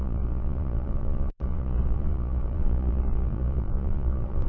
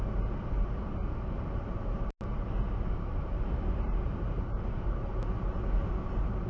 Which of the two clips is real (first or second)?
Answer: second